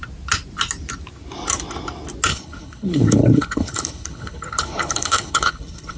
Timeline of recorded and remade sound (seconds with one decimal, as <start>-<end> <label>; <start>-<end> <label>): 0.0-2.3 recorded; 2.3-6.0 remade